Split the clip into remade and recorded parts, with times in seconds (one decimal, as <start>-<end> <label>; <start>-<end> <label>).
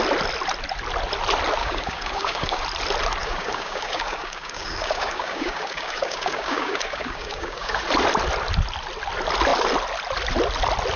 0.0-1.6 recorded; 1.6-2.6 remade; 2.6-3.2 recorded; 3.2-7.8 remade; 7.8-11.0 recorded